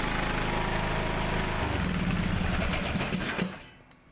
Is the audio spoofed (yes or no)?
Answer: no